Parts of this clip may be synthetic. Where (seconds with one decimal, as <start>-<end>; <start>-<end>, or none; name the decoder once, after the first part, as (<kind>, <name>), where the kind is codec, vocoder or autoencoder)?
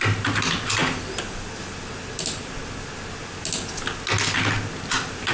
none